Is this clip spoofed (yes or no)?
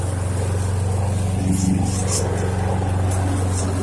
no